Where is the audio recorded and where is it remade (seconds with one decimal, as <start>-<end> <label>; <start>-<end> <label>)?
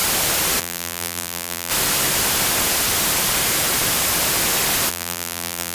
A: 0.0-0.6 recorded; 0.6-1.7 remade; 1.7-4.9 recorded; 4.9-5.7 remade